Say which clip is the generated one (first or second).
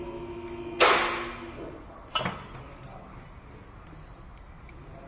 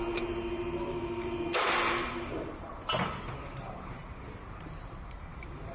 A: second